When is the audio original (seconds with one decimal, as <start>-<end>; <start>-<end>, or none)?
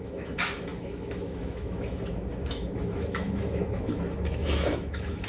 none